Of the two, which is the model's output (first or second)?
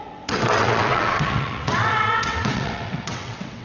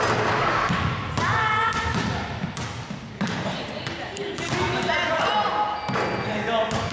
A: first